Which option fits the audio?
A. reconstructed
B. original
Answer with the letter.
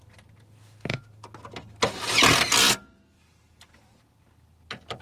B